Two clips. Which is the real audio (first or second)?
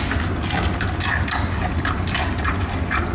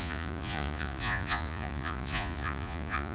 first